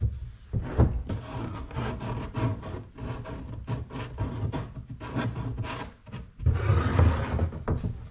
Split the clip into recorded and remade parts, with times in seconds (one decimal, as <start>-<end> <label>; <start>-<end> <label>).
0.0-1.4 recorded; 1.4-1.9 remade; 1.9-8.1 recorded